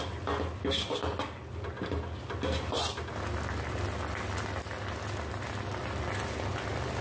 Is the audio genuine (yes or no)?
yes